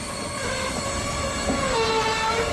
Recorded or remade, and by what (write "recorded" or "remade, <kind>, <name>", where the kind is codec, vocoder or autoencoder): recorded